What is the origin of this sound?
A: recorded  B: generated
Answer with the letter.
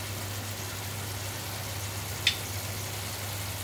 A